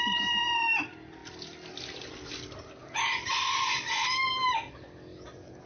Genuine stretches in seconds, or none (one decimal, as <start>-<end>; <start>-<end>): 0.0-2.8; 4.6-5.7